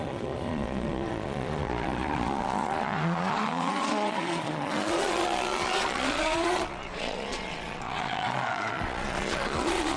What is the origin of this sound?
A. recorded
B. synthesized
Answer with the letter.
B